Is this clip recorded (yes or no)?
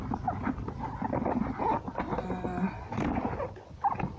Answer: yes